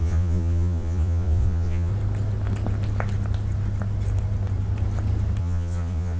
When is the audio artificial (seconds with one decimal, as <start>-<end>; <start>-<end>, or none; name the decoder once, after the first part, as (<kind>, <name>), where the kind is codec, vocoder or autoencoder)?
0.0-1.9 (vocoder, Vocos); 5.4-6.2